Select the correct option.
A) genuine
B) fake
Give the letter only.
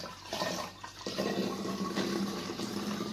B